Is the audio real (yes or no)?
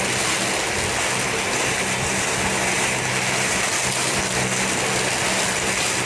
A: yes